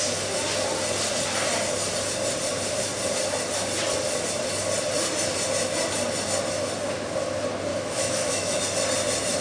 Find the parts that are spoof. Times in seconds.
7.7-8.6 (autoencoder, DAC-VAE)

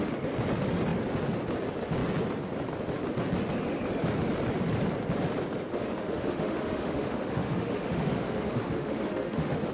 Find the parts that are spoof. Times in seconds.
5.7-9.7 (autoencoder, DAC-VAE)

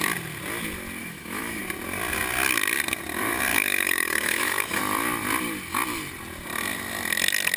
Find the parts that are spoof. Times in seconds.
1.0-1.6 (autoencoder, DAC-VAE); 3.5-4.8

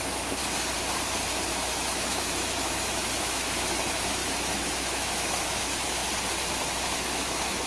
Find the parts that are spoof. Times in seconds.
0.0-0.4 (autoencoder, DAC-VAE); 1.5-6.0; 6.8-7.7

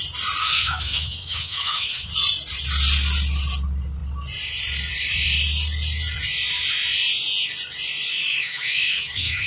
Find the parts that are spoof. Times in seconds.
0.4-2.1 (autoencoder, DAC-VAE); 8.1-9.5

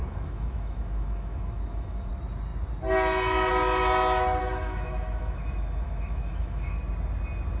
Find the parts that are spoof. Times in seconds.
0.0-2.1 (autoencoder, DAC-VAE); 4.4-6.8

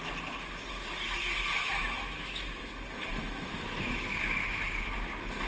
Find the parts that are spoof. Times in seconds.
1.8-2.7 (autoencoder, DAC-VAE); 3.1-5.1